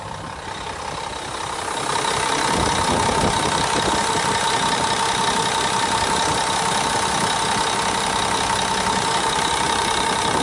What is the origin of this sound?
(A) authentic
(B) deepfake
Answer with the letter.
A